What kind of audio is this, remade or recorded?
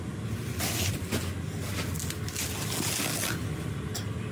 recorded